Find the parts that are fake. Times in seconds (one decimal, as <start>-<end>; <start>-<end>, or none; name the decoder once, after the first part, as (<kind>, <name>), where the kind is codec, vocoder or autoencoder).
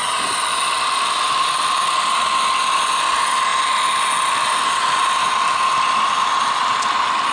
none